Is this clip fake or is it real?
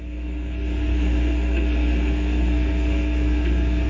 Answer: fake